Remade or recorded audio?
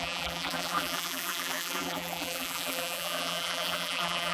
remade